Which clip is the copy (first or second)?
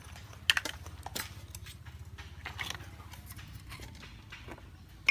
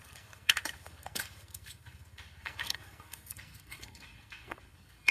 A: second